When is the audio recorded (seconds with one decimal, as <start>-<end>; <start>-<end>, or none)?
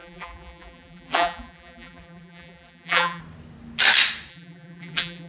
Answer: 3.2-4.3